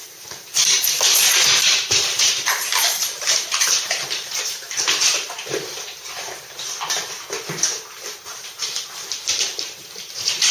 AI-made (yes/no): yes